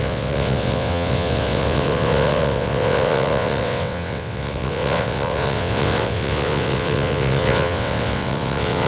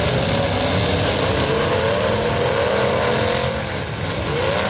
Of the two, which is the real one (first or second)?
second